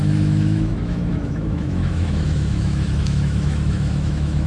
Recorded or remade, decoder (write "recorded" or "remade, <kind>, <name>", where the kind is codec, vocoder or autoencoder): remade, autoencoder, DAC-VAE